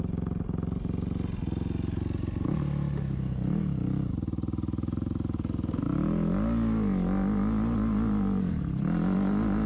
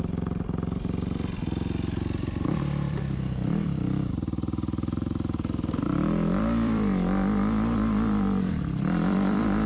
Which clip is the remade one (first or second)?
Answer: second